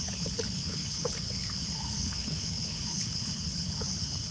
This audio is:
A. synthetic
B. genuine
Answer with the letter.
A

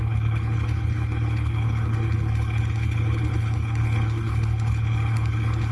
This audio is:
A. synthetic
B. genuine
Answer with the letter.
A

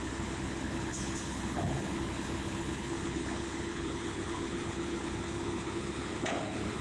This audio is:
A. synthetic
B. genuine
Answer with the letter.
A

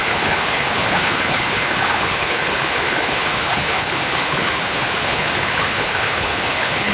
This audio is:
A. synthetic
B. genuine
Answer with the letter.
A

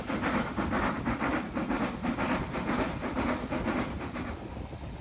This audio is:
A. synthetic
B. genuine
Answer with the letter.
B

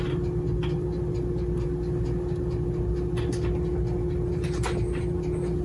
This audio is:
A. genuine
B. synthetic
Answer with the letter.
A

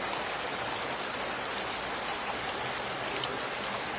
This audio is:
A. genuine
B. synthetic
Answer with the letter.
A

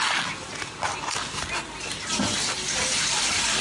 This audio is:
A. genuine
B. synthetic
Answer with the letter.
A